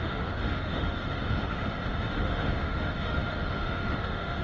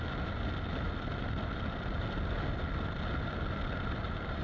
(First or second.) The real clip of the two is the second